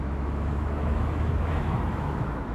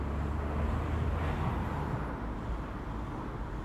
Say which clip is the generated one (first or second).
first